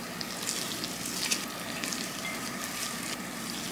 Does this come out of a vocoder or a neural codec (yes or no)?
no